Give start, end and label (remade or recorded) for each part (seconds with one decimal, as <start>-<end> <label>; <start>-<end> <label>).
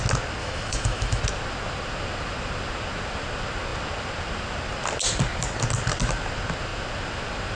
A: 0.0-0.4 recorded; 0.4-1.2 remade; 1.2-7.5 recorded